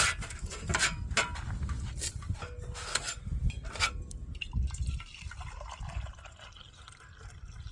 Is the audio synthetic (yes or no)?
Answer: no